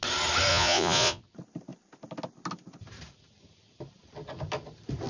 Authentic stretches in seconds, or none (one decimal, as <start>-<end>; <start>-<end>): 0.0-0.5; 1.2-5.1